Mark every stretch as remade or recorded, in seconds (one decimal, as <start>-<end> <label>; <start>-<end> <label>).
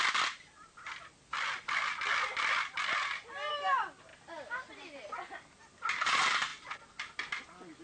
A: 0.0-4.1 recorded; 4.1-5.0 remade; 5.0-7.8 recorded